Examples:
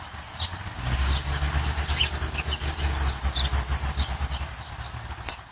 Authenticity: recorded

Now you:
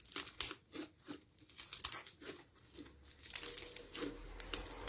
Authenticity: recorded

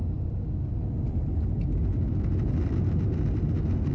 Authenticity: recorded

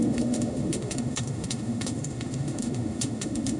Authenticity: remade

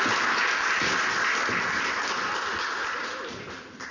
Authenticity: recorded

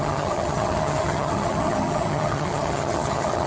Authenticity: remade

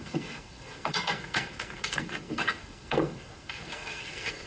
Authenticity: remade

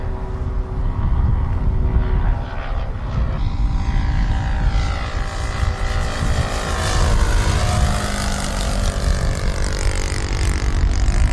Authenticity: recorded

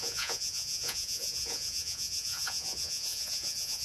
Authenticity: remade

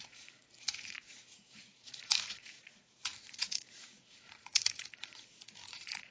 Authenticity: remade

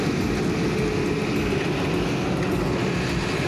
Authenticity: recorded